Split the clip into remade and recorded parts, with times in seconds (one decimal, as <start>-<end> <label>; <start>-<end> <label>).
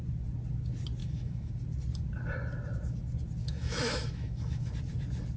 0.0-1.0 recorded; 1.0-1.5 remade; 1.5-3.4 recorded; 3.4-4.7 remade; 4.7-5.4 recorded